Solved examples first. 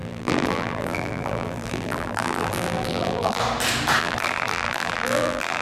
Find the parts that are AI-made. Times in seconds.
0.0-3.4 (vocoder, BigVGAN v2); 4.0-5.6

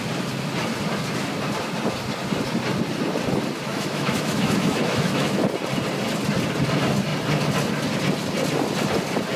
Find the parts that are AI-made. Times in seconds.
3.7-5.4 (autoencoder, DAC-VAE)

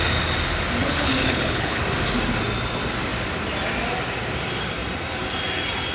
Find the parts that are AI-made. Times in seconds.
0.8-1.8 (codec, HILCodec)

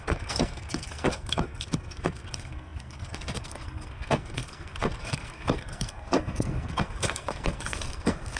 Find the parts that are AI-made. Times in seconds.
0.0-8.4 (codec, SNAC)